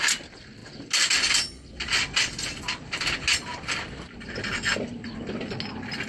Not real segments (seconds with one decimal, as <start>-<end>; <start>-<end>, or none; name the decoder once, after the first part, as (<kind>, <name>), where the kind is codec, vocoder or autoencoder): none